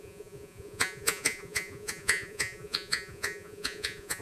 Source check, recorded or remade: remade